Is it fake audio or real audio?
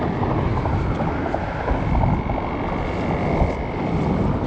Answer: real